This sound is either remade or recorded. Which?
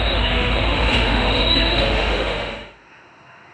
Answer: remade